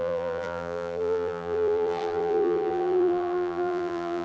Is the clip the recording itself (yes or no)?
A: no